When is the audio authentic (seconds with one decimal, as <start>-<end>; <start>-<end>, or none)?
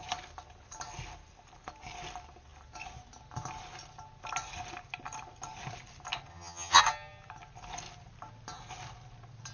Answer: 0.0-6.3; 6.8-9.5